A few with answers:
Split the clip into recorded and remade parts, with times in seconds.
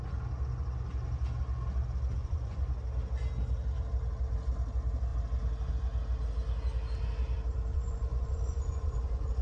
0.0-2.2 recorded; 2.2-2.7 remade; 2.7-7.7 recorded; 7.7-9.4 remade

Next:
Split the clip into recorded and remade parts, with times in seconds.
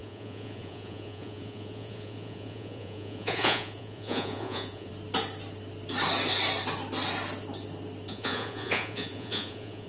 0.0-4.9 remade; 4.9-8.1 recorded; 8.1-9.9 remade